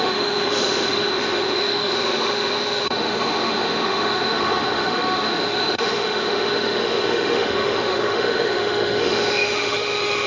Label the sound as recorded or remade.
remade